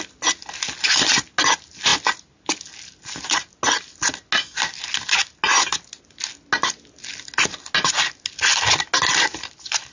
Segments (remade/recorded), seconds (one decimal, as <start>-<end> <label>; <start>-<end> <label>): 0.0-9.9 recorded